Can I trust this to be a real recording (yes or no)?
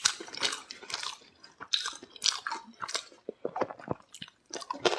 yes